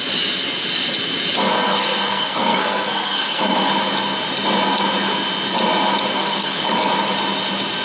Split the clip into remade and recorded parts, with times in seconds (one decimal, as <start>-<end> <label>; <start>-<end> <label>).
0.0-1.7 recorded; 1.7-3.7 remade; 3.7-6.1 recorded; 6.1-6.9 remade; 6.9-7.8 recorded